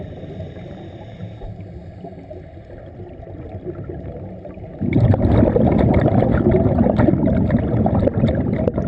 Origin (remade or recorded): recorded